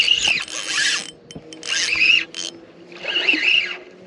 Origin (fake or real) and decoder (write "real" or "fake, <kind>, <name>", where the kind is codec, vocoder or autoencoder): real